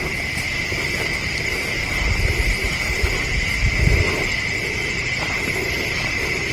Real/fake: real